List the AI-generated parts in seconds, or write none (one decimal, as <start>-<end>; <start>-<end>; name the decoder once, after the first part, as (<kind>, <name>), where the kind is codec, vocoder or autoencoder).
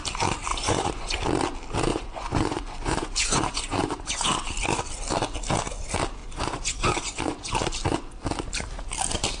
0.5-1.2 (vocoder, Vocos); 1.9-4.3; 6.2-7.5